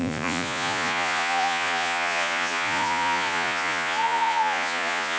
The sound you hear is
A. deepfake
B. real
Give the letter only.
A